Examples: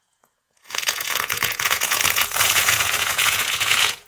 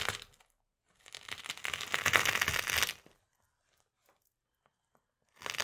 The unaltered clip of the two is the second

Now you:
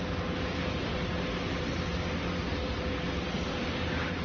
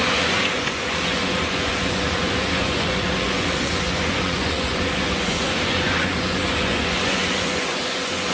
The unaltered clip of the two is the first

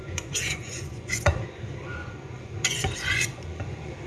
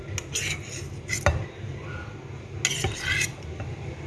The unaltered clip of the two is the second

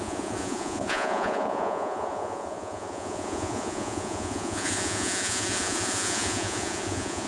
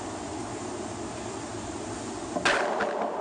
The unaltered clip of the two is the second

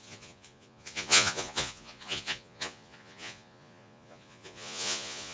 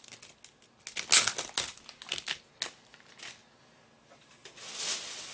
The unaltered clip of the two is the second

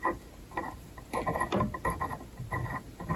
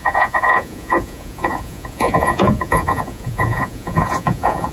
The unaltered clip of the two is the first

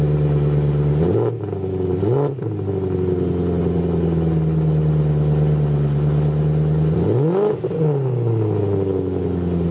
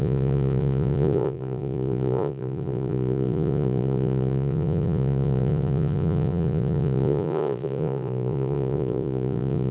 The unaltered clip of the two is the first